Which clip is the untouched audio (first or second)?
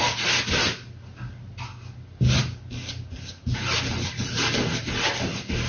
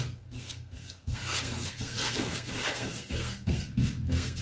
first